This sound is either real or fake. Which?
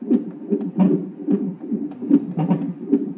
real